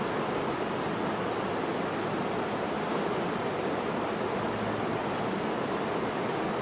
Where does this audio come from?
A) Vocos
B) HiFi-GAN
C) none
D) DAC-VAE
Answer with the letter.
C